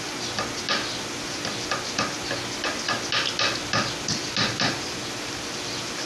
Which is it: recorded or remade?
recorded